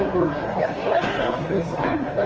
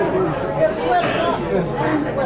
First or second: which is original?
second